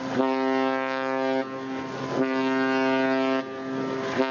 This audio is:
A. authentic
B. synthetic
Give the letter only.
A